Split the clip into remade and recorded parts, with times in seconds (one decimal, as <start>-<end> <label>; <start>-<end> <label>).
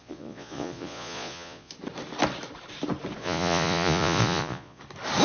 0.0-1.7 remade; 1.7-3.2 recorded; 3.2-4.8 remade; 4.8-5.2 recorded